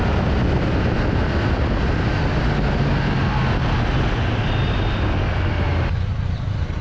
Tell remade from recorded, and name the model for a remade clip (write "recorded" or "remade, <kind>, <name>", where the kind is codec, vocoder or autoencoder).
recorded